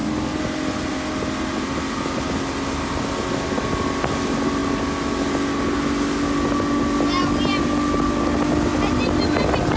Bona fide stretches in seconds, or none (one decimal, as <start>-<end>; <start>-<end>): 0.0-9.8

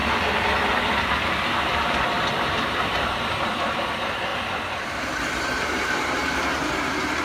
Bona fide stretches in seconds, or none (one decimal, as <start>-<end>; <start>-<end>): 0.0-1.1

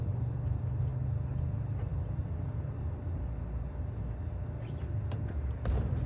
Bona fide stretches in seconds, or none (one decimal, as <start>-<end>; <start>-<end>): 0.0-6.1

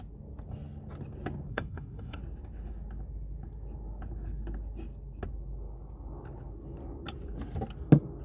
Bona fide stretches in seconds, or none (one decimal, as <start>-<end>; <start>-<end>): 0.0-1.5; 2.2-8.2

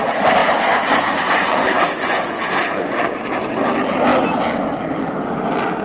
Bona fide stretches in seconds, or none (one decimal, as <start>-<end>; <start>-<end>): 0.0-0.4; 3.1-5.8